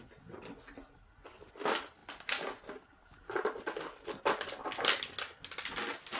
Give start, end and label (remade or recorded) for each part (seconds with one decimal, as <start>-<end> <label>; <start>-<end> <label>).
0.0-6.2 recorded